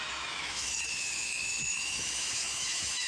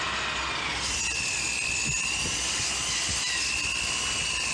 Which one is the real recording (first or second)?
second